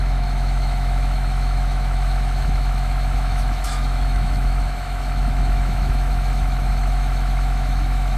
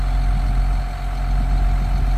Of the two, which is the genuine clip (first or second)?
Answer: second